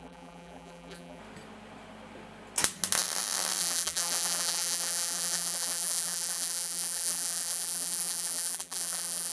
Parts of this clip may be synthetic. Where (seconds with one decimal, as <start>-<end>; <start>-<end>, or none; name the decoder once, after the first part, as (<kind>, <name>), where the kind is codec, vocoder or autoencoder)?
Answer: 0.0-1.2 (vocoder, BigVGAN v2); 3.6-9.3